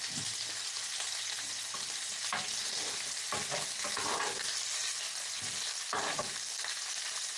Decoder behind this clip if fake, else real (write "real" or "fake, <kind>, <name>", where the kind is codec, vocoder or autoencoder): real